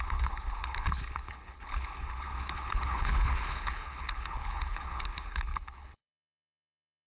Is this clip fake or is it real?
fake